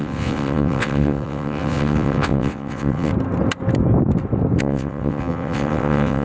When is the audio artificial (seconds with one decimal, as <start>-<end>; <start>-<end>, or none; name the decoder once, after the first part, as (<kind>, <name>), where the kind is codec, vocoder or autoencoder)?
0.0-3.1 (vocoder, WaveNeXt); 4.6-6.2